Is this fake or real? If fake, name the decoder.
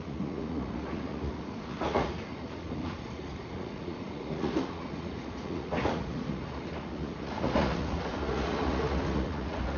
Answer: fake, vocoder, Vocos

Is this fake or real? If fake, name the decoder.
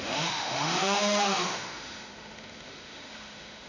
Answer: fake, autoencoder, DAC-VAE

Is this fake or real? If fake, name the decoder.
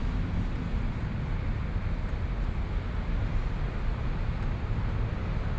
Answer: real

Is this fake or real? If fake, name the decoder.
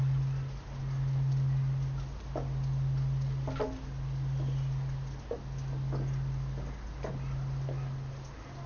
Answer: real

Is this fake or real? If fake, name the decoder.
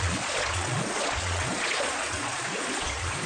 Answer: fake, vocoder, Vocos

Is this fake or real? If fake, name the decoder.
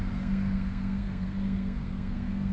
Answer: fake, codec, SNAC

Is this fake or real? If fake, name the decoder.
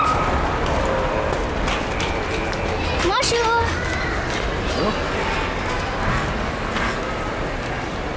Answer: real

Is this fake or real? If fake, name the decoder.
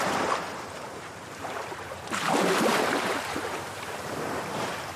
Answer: fake, vocoder, BigVGAN v2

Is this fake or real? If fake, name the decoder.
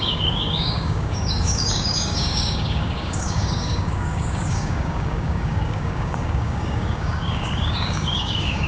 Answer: fake, codec, DAC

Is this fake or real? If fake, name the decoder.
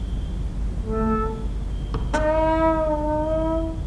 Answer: real